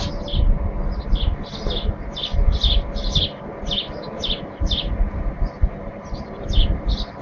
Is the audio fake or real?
real